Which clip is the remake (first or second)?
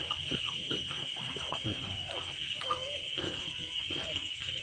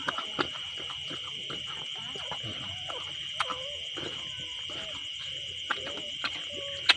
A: first